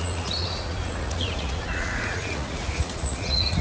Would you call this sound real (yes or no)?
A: no